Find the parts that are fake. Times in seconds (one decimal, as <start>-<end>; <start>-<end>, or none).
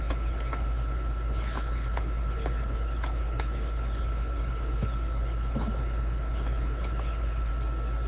0.0-7.5